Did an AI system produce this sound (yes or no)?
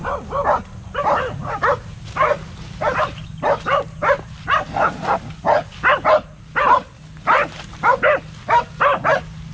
no